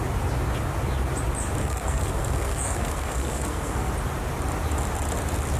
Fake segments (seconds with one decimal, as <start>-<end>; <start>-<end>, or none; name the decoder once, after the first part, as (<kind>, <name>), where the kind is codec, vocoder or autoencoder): 1.6-3.9 (codec, SNAC)